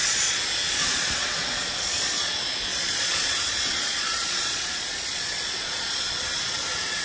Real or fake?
fake